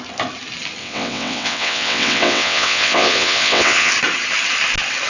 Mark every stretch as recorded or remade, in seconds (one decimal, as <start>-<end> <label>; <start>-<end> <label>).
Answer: 0.0-0.8 recorded; 0.8-3.9 remade; 3.9-5.1 recorded